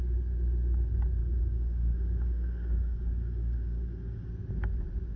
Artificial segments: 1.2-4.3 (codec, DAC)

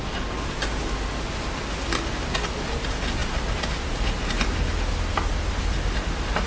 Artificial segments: none

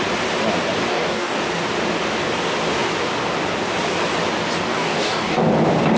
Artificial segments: 0.9-1.4 (codec, DAC); 4.7-5.4

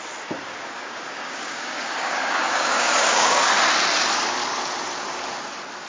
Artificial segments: 0.5-3.4 (codec, DAC)

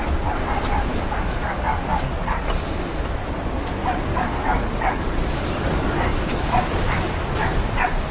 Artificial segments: 0.9-2.1 (codec, DAC); 4.1-7.6

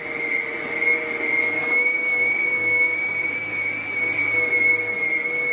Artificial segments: 1.6-3.3 (codec, DAC)

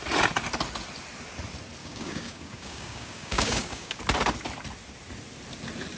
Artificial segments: 1.8-4.0 (codec, DAC)

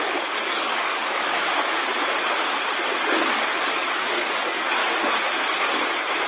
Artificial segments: 0.0-1.3 (codec, DAC); 3.7-4.8